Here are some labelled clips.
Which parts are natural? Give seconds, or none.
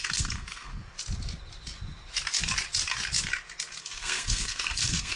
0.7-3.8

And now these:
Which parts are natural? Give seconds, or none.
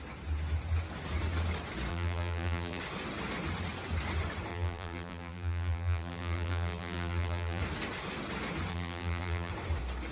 0.0-1.9; 2.8-4.5; 7.6-8.7; 9.5-10.1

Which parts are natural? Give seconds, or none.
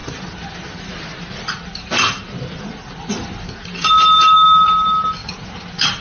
0.0-5.2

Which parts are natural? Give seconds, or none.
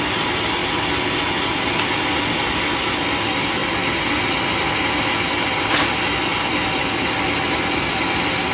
0.0-8.5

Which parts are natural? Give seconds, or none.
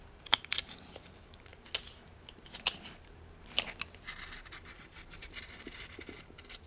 1.5-5.3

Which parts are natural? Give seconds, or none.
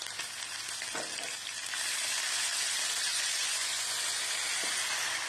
0.0-3.1; 4.2-5.3